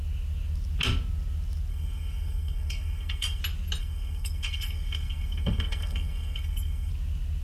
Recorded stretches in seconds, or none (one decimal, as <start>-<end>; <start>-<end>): 0.0-1.7; 3.4-3.8; 6.9-7.4